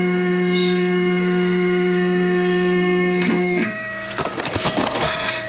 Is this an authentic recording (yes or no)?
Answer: no